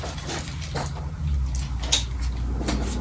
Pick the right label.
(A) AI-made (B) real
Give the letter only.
B